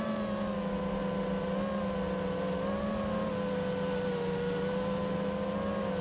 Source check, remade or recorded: recorded